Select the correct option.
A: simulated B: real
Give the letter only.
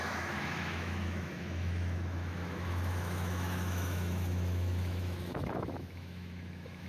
A